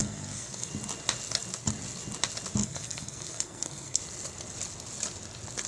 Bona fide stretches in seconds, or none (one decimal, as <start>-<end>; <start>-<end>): 0.7-2.6; 4.0-5.7